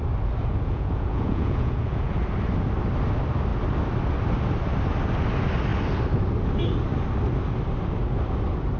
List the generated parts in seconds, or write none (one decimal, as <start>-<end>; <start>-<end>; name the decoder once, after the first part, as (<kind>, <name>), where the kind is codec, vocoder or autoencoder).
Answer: 0.4-2.2 (vocoder, Vocos)